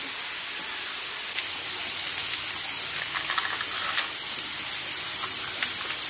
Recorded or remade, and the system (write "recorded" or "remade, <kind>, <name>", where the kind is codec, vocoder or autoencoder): recorded